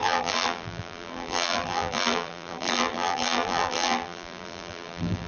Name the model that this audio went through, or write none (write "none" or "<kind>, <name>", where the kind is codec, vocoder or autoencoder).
vocoder, BigVGAN v2